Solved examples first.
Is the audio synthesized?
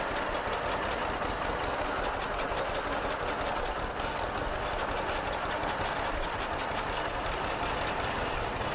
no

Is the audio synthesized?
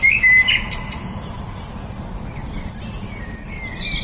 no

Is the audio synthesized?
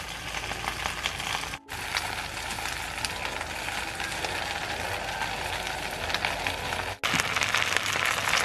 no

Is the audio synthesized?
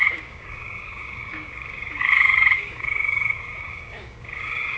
yes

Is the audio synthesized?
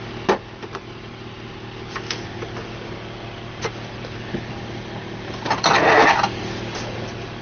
no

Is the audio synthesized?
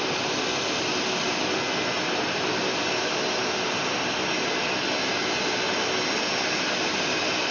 no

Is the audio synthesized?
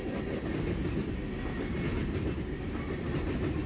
no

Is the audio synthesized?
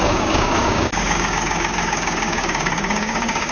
yes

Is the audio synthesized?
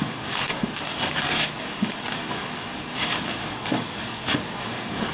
yes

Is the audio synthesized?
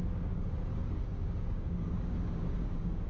yes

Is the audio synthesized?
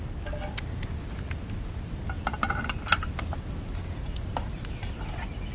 no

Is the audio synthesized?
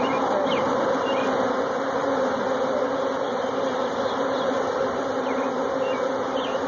no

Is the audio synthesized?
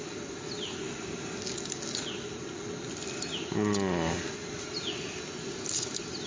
no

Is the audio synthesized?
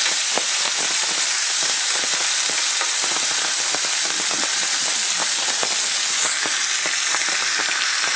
no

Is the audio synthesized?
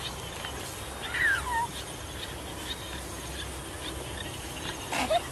no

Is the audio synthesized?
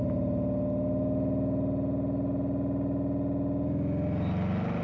no